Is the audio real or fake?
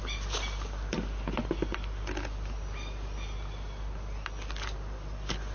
real